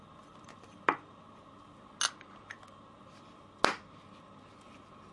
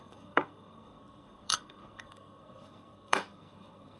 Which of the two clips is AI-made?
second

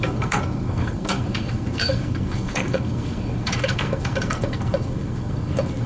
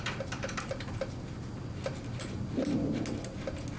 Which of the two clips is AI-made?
first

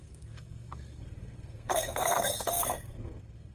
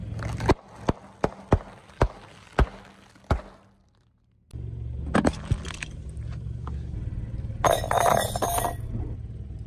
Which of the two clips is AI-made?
first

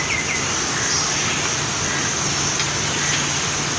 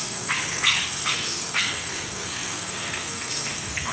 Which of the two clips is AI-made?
second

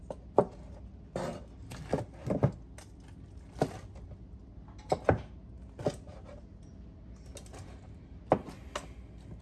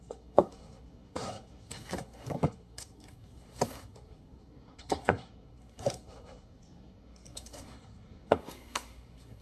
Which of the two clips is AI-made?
second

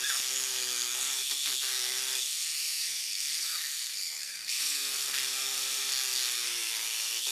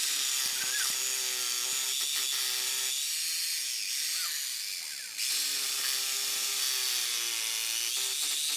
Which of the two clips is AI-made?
first